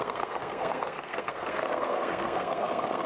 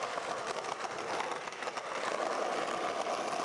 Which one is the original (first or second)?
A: second